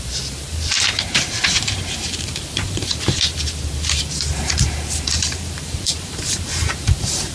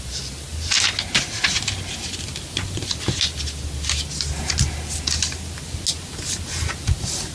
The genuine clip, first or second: second